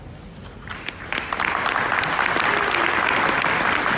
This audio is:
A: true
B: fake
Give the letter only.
A